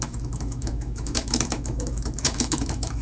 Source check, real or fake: fake